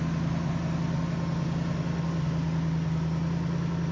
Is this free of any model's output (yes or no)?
yes